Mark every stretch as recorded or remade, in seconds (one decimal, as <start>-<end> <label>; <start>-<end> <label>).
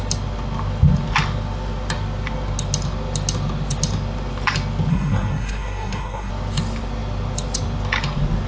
0.0-4.9 recorded; 4.9-6.3 remade; 6.3-8.5 recorded